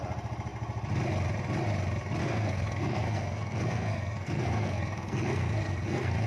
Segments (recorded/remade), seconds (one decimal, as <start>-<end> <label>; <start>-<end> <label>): 0.0-2.2 recorded; 2.2-6.3 remade